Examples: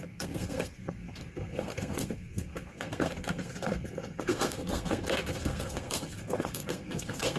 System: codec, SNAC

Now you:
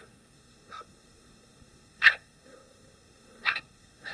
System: codec, SNAC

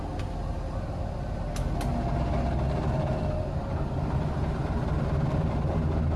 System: none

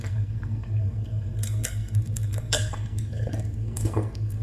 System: codec, SNAC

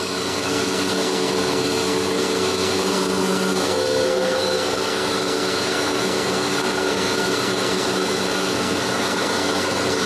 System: codec, SNAC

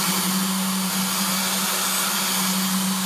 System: none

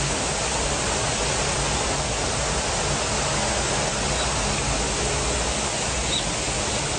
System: none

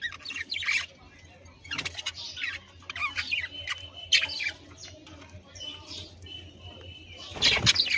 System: none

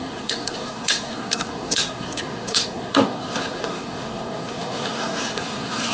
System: codec, SNAC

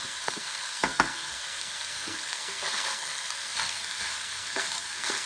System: codec, SNAC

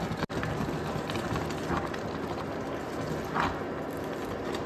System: none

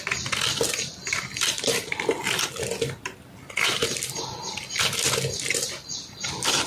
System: none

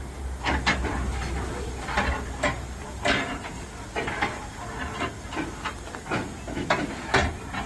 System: none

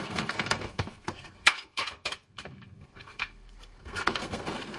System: codec, SNAC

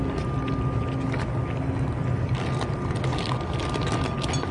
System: none